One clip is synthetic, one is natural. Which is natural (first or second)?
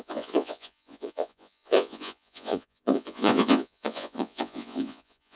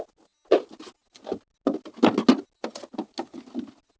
second